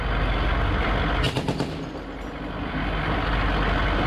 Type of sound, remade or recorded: recorded